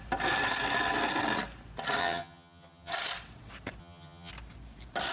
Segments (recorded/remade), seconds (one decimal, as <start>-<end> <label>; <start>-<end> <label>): 0.0-2.0 recorded; 2.0-2.9 remade; 2.9-3.8 recorded; 3.8-4.3 remade; 4.3-5.1 recorded